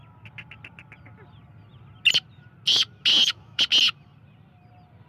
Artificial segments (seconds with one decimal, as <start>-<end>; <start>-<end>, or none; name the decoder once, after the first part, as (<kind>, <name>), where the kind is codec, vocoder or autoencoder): 3.1-3.6 (autoencoder, DAC-VAE)